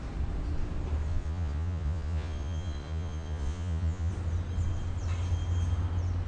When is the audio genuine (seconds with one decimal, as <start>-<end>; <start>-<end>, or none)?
0.0-1.1; 4.1-6.3